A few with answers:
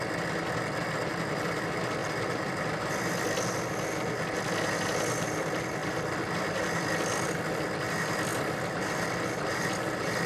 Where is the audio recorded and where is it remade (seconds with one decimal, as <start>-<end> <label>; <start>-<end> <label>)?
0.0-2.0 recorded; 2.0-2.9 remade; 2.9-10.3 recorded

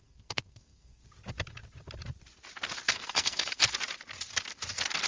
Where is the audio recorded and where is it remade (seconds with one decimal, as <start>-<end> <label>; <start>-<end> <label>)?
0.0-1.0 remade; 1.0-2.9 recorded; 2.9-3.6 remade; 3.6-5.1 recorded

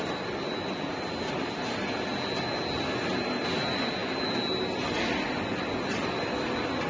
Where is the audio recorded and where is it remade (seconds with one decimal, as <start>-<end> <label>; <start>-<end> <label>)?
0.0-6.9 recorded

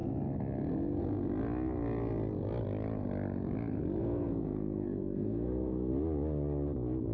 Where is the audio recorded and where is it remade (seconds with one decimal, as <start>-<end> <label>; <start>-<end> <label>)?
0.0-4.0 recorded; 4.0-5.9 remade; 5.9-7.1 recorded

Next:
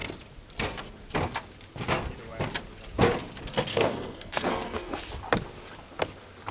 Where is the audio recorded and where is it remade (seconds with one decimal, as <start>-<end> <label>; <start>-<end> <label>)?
0.0-3.7 recorded; 3.7-5.0 remade; 5.0-6.5 recorded

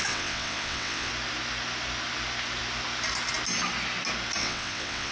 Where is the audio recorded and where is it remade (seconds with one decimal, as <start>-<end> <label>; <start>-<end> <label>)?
0.0-1.1 remade; 1.1-4.4 recorded; 4.4-5.1 remade

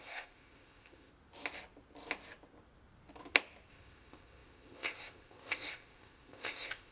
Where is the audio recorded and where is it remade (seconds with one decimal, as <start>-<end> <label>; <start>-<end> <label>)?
0.0-1.1 remade; 1.1-3.7 recorded; 3.7-6.9 remade

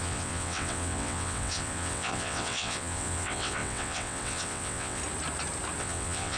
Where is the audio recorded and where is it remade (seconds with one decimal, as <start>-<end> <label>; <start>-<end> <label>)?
0.0-5.0 remade; 5.0-5.8 recorded; 5.8-6.4 remade